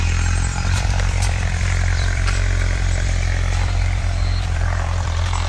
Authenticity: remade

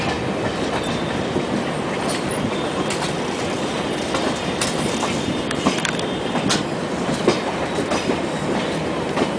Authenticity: remade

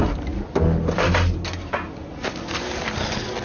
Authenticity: recorded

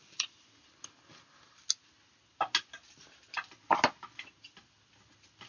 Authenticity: recorded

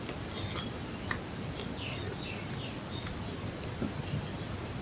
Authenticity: recorded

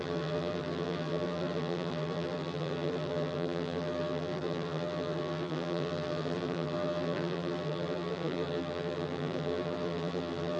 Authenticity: remade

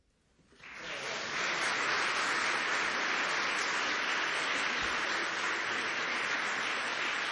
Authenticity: recorded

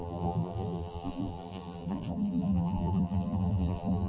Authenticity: remade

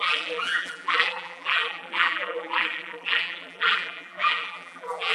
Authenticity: remade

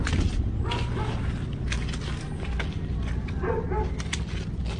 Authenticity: recorded